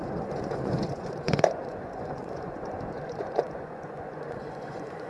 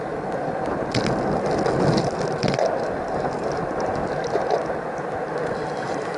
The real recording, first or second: second